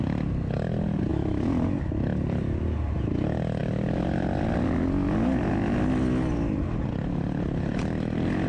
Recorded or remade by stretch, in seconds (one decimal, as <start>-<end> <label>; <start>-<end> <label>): 0.0-1.1 recorded; 1.1-1.8 remade; 1.8-8.5 recorded